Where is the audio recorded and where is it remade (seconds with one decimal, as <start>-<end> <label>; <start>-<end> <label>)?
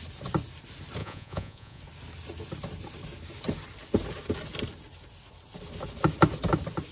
0.0-1.0 recorded; 1.0-1.8 remade; 1.8-6.9 recorded